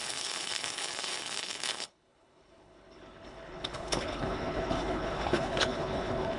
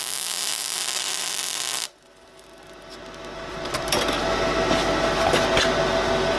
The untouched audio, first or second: second